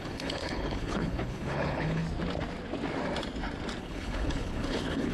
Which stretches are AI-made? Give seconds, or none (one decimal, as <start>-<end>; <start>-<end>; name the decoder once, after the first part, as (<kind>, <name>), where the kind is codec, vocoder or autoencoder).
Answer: 0.0-2.0 (codec, HILCodec); 3.8-5.1